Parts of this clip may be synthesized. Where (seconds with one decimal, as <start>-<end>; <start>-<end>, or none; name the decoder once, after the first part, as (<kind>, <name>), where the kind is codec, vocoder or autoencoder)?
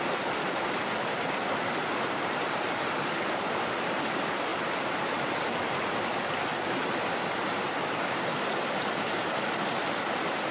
none